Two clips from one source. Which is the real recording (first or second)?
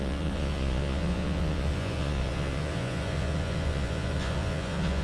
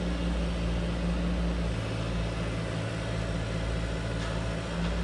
second